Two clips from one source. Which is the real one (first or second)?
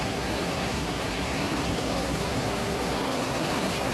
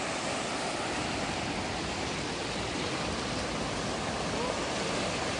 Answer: second